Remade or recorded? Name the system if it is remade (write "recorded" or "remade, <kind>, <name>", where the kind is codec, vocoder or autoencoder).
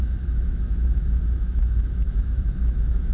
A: remade, autoencoder, DAC-VAE